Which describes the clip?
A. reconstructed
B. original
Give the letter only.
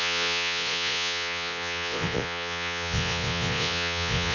A